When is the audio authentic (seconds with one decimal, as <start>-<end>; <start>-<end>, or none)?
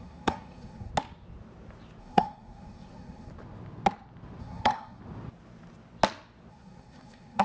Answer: 0.9-2.0; 3.3-4.4; 5.0-6.5